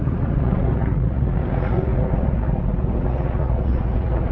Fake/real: fake